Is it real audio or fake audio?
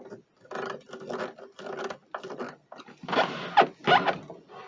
real